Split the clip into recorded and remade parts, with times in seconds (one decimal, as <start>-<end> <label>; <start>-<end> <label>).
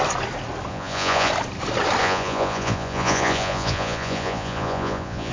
0.0-0.7 recorded; 0.7-1.3 remade; 1.3-2.0 recorded; 2.0-5.3 remade